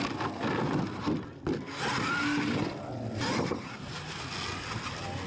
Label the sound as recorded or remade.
recorded